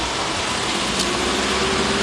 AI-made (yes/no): no